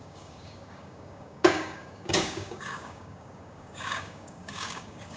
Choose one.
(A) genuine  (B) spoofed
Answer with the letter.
B